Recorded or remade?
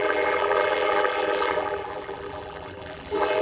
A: remade